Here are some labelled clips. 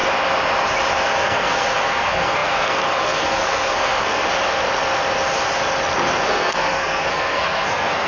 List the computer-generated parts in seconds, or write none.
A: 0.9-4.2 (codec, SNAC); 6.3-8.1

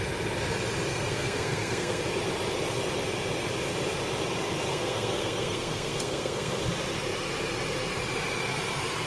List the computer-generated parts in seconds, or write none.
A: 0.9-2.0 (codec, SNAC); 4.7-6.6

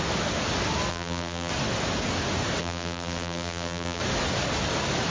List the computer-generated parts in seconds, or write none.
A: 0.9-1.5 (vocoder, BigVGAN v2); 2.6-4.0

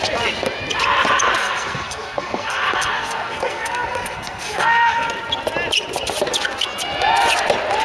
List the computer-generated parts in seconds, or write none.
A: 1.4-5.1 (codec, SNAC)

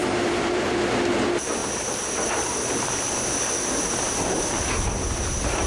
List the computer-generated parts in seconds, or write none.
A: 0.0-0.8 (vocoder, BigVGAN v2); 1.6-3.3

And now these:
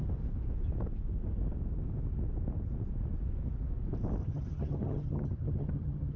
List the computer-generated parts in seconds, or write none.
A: 4.2-6.2 (vocoder, HiFi-GAN)

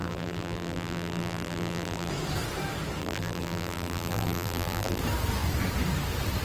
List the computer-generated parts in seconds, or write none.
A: 0.0-2.1 (vocoder, BigVGAN v2); 3.0-5.0

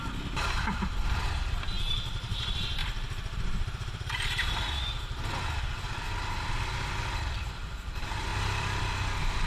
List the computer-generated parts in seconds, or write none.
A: 2.8-4.9 (vocoder, BigVGAN v2); 8.3-8.8